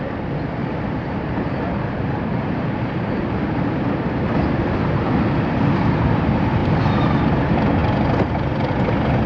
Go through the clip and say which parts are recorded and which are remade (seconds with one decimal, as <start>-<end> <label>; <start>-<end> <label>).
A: 0.0-0.6 recorded; 0.6-3.0 remade; 3.0-6.6 recorded; 6.6-7.2 remade; 7.2-9.3 recorded